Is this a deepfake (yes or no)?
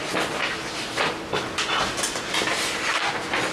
no